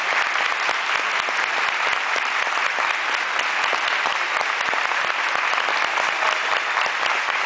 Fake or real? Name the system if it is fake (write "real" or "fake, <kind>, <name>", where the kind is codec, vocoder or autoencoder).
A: real